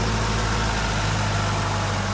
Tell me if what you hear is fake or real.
real